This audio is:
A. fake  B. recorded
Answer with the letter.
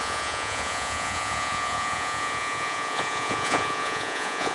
A